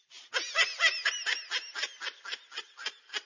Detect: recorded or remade recorded